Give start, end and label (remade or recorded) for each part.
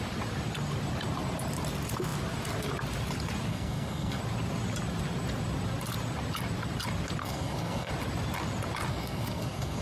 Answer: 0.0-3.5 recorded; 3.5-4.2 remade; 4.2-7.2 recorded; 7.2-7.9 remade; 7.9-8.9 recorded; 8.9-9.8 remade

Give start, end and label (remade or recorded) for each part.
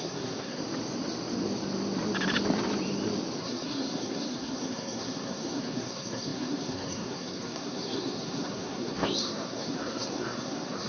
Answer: 0.0-0.6 remade; 0.6-3.4 recorded; 3.4-10.9 remade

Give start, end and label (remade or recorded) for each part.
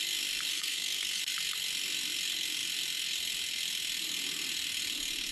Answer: 0.0-0.5 recorded; 0.5-1.2 remade; 1.2-5.3 recorded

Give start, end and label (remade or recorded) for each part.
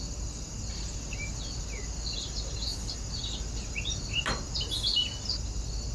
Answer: 0.0-5.9 recorded